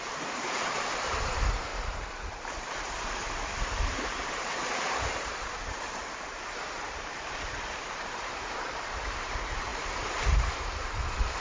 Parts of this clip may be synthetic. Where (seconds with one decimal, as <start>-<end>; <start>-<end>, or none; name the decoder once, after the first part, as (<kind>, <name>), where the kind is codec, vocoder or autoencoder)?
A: 0.0-1.7 (vocoder, BigVGAN v2); 2.9-11.4